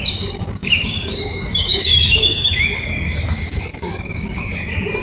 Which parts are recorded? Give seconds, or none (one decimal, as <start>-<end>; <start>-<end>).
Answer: none